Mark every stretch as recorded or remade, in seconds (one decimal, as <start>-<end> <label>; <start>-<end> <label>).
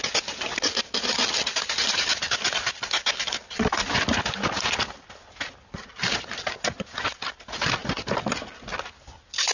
0.0-9.5 recorded